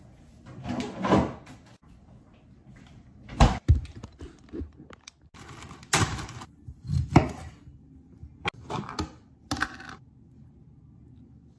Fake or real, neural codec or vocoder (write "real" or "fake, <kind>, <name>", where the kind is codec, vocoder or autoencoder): real